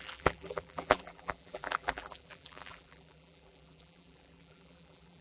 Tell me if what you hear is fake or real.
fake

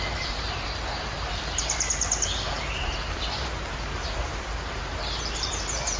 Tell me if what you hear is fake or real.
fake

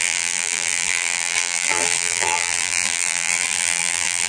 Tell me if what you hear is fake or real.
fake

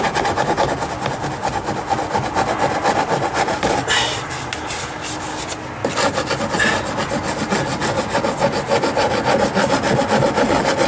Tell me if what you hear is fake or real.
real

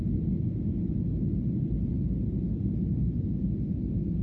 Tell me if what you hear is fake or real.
real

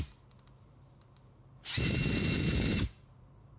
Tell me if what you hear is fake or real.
fake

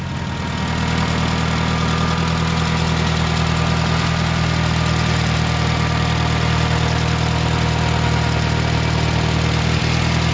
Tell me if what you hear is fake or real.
real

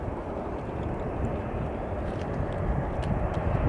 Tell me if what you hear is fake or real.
fake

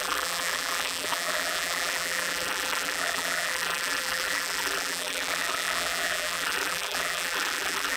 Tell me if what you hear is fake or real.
fake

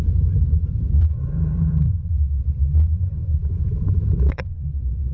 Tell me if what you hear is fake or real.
fake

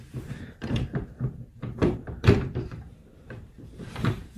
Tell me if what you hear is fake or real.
fake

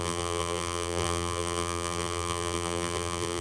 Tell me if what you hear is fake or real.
fake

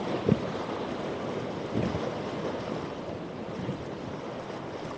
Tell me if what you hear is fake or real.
fake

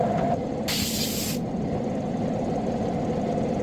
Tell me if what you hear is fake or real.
real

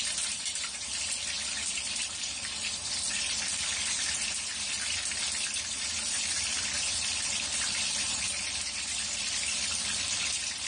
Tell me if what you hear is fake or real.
fake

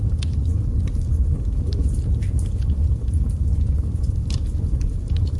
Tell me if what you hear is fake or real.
fake